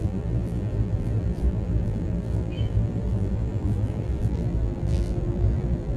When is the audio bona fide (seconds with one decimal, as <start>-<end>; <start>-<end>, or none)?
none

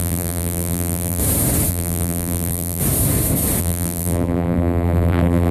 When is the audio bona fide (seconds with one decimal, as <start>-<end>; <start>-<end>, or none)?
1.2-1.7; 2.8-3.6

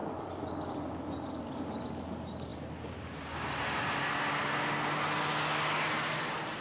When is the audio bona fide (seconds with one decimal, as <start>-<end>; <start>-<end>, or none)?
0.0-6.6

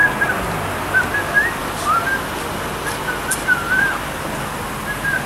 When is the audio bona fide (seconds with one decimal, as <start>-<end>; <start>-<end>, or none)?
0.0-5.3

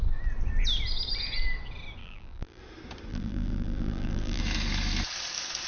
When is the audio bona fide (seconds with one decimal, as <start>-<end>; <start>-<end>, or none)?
0.0-2.0; 2.6-3.1; 4.4-5.7

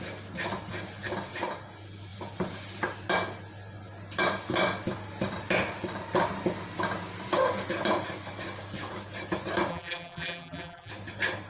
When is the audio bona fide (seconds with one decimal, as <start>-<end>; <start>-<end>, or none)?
0.0-9.7; 10.9-11.5

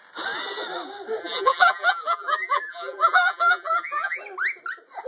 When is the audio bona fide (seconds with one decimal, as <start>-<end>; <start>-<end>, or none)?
0.0-1.2; 4.2-5.1

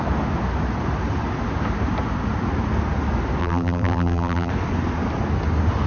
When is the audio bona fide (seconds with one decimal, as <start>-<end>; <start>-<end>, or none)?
0.0-3.4; 4.5-5.9